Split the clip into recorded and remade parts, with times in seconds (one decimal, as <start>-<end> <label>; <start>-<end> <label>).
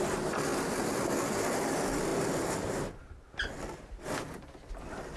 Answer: 0.0-5.2 recorded